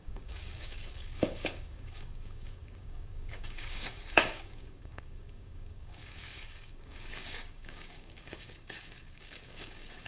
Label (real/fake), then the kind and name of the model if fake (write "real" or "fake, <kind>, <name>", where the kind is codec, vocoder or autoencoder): fake, codec, DAC